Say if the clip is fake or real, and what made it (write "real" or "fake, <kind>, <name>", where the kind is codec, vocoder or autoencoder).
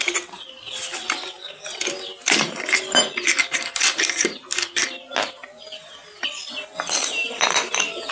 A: real